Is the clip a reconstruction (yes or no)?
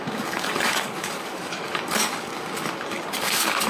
yes